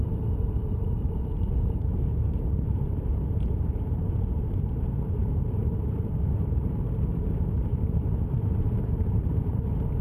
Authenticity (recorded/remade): remade